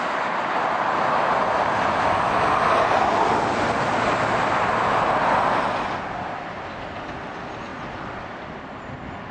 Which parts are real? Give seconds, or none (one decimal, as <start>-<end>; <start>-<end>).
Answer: 0.0-9.3